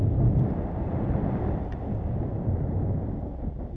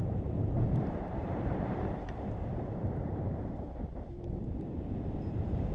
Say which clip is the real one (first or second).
first